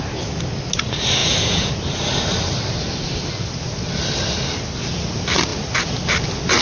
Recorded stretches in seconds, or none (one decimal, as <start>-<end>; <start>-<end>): 0.0-1.2; 1.7-6.6